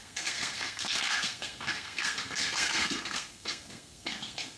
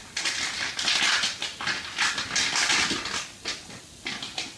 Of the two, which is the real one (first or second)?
second